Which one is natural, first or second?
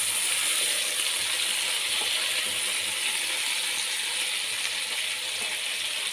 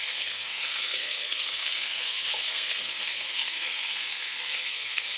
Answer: first